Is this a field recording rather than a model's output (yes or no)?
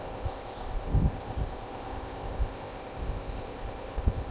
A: no